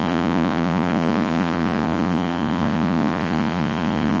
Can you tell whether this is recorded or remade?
remade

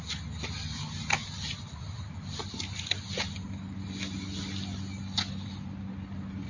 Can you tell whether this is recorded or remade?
recorded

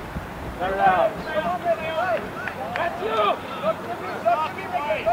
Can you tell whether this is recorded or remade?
remade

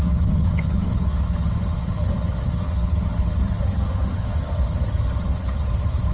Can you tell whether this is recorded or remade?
remade